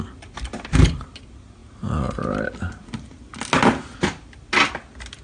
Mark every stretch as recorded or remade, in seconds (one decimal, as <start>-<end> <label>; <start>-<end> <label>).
0.0-5.2 recorded